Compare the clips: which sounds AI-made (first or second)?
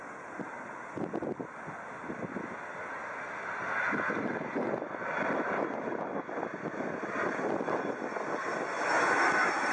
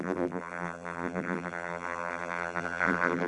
second